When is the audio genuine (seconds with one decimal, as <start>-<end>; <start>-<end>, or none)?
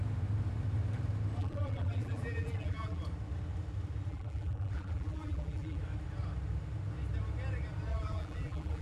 0.0-1.4; 3.0-4.1; 5.8-7.9